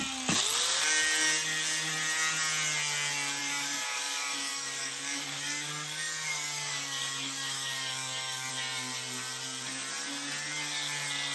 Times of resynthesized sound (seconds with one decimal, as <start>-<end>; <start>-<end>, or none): 3.4-8.5